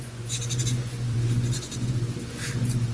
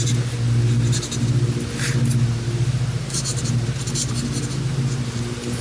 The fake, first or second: first